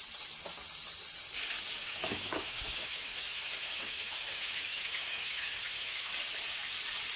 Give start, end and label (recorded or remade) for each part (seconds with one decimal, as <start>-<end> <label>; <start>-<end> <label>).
0.0-1.8 recorded; 1.8-6.1 remade; 6.1-7.2 recorded